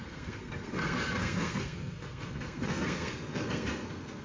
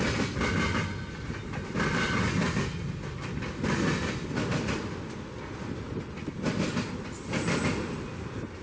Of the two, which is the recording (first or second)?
second